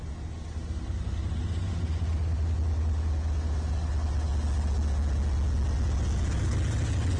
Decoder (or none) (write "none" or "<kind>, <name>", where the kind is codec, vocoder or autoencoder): none